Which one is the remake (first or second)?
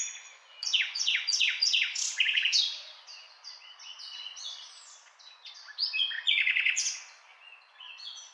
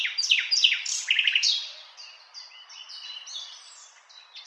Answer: first